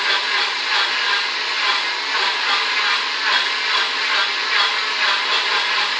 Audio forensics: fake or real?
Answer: real